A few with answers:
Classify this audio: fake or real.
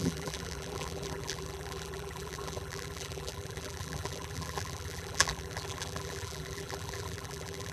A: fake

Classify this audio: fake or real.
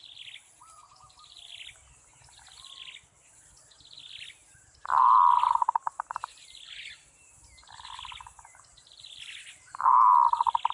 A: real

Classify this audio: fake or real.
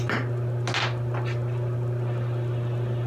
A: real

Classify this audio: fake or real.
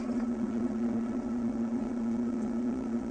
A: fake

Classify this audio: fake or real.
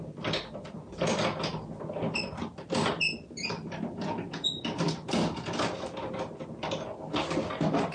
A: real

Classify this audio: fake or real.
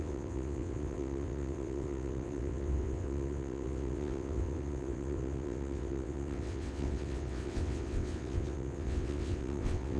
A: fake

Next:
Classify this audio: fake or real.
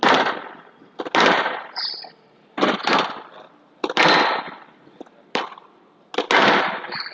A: real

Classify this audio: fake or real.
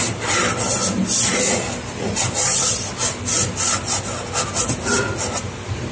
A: real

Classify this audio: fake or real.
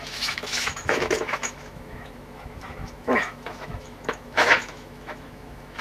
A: fake